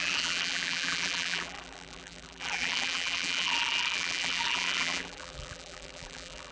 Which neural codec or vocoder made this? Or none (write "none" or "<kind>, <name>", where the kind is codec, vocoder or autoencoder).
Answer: vocoder, BigVGAN v2